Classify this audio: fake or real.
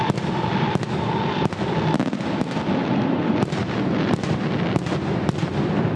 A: real